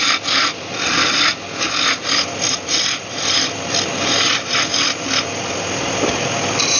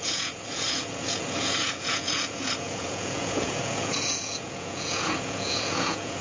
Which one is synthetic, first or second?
second